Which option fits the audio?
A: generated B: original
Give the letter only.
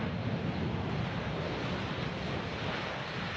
B